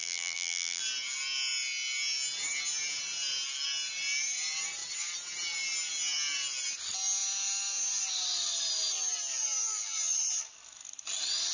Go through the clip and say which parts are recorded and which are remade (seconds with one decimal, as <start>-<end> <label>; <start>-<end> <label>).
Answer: 0.0-0.8 remade; 0.8-11.5 recorded